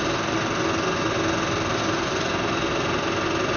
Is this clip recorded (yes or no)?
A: yes